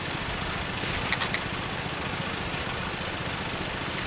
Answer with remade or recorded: recorded